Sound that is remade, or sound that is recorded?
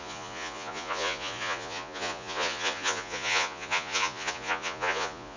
remade